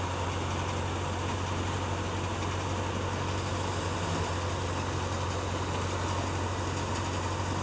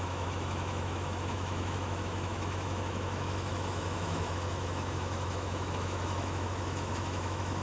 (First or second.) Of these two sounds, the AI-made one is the second